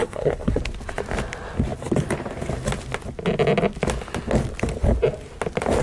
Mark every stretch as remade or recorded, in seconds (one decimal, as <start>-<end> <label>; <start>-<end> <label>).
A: 0.0-0.6 remade; 0.6-5.8 recorded